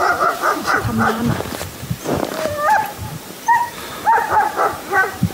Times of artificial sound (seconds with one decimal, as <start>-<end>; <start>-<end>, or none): 0.0-5.3